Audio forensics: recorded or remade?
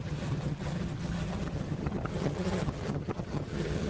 remade